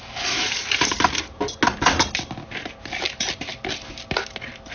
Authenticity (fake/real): real